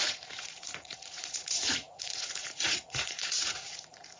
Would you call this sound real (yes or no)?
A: no